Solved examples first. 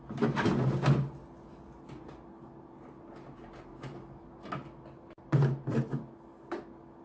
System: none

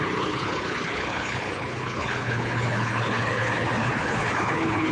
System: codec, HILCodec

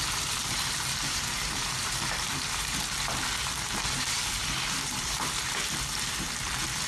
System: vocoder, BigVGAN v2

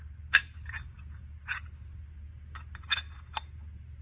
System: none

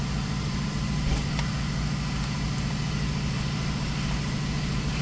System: none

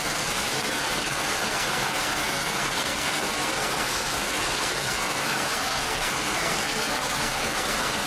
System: codec, SNAC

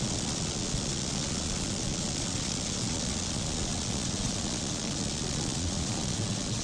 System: vocoder, Vocos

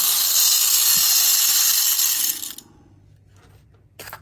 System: none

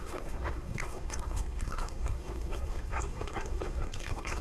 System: codec, SNAC